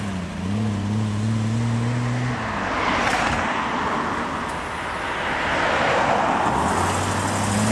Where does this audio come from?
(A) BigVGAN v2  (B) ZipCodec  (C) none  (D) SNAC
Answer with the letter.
C